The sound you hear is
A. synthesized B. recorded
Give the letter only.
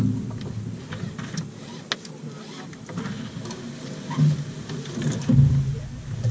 B